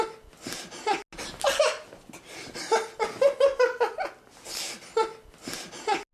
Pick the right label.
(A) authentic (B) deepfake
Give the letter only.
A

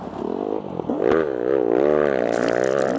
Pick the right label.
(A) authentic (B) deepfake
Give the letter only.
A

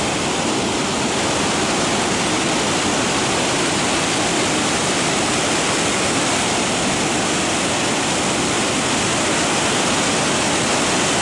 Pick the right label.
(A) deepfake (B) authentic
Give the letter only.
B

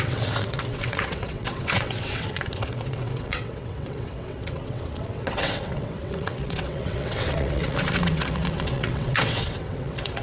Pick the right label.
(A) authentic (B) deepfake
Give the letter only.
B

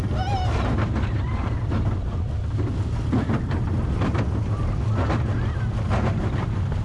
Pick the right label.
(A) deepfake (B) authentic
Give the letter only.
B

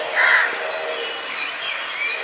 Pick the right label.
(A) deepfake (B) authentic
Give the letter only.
B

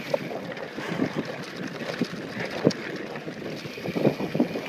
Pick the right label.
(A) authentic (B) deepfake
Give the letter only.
A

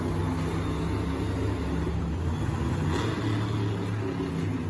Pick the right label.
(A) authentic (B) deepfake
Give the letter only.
A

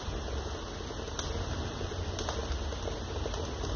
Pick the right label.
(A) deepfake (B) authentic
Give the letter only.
B